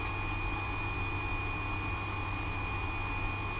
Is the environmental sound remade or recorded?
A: recorded